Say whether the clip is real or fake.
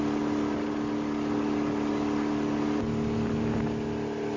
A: real